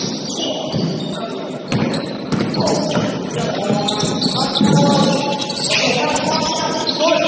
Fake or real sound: real